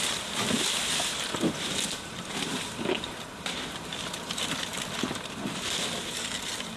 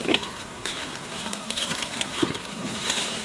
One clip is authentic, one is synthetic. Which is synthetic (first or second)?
second